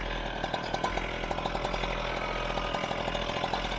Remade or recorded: recorded